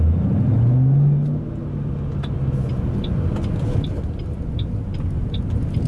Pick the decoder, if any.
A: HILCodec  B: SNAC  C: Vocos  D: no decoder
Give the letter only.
D